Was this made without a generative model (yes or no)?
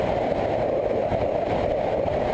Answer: yes